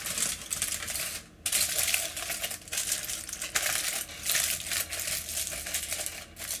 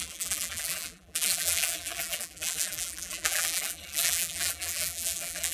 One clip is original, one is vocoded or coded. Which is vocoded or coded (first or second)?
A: second